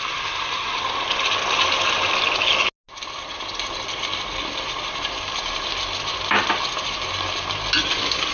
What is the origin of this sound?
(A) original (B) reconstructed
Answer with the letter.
A